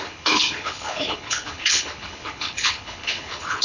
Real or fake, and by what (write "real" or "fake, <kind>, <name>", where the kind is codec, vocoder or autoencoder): fake, codec, HILCodec